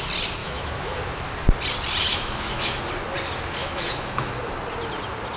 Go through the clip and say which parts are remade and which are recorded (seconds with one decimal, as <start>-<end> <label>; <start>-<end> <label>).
0.0-0.4 recorded; 0.4-1.0 remade; 1.0-2.1 recorded; 2.1-2.8 remade; 2.8-3.6 recorded; 3.6-4.3 remade; 4.3-5.4 recorded